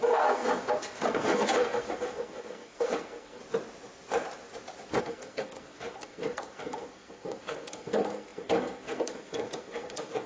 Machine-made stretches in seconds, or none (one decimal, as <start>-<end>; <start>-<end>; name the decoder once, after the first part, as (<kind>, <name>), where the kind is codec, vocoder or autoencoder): 0.0-3.4 (codec, SNAC); 5.0-10.3